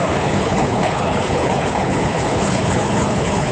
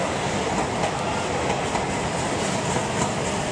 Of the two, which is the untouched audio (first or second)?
second